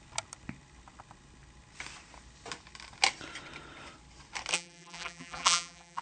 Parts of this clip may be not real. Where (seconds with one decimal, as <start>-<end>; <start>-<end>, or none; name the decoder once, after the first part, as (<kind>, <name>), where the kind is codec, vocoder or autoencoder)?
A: 4.5-6.0 (vocoder, BigVGAN v2)